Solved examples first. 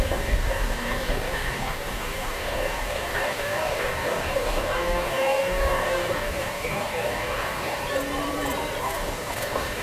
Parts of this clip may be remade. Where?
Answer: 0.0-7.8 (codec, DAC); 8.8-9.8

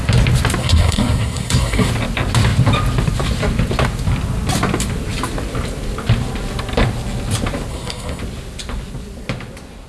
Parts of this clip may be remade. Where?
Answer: 0.6-1.9 (codec, SNAC); 7.7-8.2

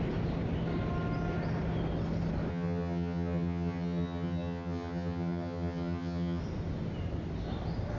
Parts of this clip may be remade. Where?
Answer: 2.5-6.4 (vocoder, HiFi-GAN)

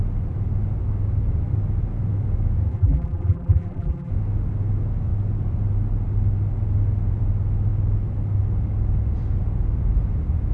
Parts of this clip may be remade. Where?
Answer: 2.7-4.1 (vocoder, BigVGAN v2)